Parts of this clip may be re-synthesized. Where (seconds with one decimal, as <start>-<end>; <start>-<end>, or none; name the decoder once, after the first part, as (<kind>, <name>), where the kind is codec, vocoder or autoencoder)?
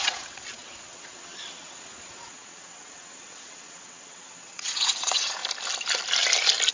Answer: 0.0-5.4 (vocoder, WaveNeXt)